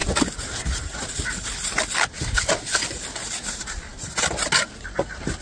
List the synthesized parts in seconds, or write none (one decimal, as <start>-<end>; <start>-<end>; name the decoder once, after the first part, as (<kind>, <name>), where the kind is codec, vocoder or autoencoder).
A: none